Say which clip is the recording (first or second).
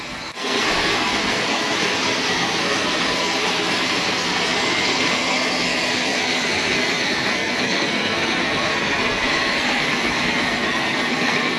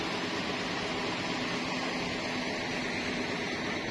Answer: second